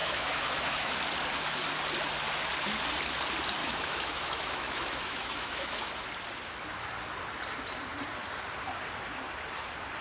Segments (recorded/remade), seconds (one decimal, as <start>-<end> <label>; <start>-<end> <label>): 0.0-1.0 remade; 1.0-3.6 recorded; 3.6-5.9 remade; 5.9-10.0 recorded